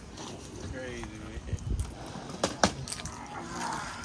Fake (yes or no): no